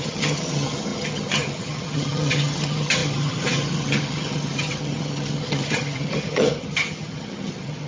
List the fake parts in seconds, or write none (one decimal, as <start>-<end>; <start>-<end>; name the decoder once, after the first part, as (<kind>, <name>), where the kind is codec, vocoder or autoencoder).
0.0-7.9 (vocoder, HiFi-GAN)